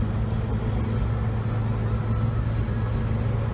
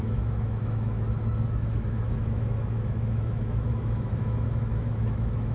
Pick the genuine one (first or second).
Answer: first